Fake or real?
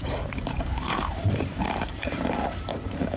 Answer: fake